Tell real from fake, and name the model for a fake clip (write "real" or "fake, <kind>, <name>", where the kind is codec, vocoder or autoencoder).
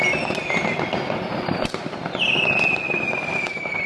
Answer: real